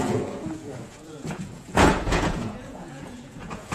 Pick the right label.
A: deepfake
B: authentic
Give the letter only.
A